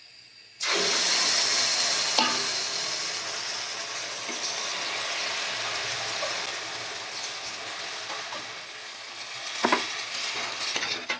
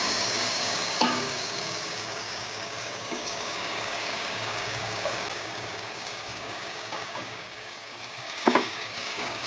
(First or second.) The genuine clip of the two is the first